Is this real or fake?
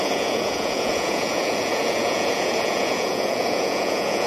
fake